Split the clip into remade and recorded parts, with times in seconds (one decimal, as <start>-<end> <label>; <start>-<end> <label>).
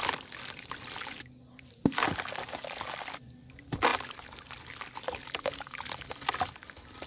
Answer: 0.0-3.9 recorded; 3.9-5.5 remade; 5.5-7.1 recorded